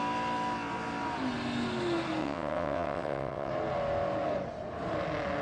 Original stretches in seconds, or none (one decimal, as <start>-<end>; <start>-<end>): 0.0-2.2; 3.5-5.4